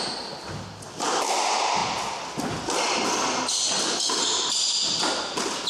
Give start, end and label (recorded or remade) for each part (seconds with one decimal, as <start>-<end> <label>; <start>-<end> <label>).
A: 0.0-5.7 recorded